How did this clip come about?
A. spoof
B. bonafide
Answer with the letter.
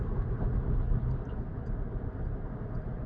B